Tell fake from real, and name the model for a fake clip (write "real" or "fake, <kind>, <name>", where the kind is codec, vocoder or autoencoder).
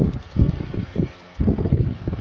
fake, codec, SNAC